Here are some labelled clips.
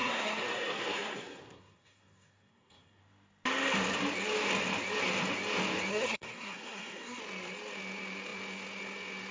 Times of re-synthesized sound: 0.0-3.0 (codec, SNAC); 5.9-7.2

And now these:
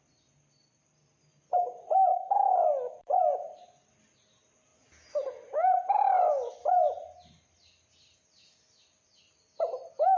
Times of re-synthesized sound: 2.1-3.2 (autoencoder, DAC-VAE)

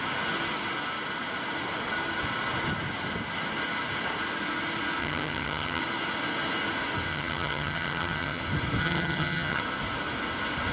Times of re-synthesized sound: 5.0-5.8 (vocoder, HiFi-GAN); 7.1-8.4; 8.8-9.6

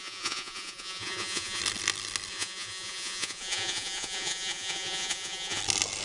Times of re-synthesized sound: 0.0-1.6 (vocoder, Vocos); 2.3-5.6

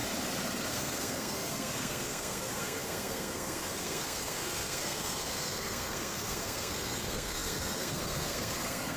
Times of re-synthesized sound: 0.7-9.0 (codec, SNAC)

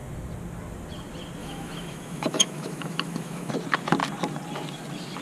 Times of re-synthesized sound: 1.4-3.5 (autoencoder, DAC-VAE)